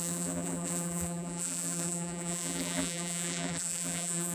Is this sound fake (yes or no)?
yes